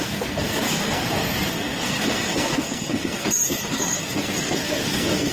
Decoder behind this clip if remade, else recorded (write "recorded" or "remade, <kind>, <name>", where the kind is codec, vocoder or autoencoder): remade, codec, SNAC